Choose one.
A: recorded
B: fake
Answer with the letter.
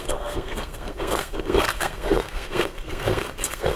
B